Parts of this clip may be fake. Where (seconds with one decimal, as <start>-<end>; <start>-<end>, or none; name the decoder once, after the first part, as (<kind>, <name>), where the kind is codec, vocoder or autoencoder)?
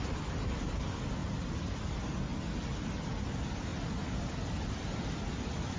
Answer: 1.2-1.8 (vocoder, BigVGAN v2)